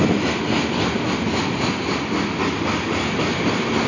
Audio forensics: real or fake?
real